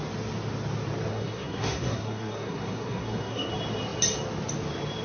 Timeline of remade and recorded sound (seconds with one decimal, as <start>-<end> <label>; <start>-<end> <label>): 0.0-1.1 recorded; 1.1-3.5 remade; 3.5-5.0 recorded